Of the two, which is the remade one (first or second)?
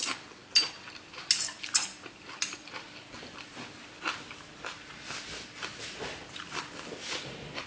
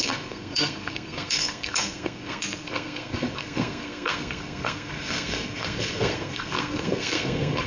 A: second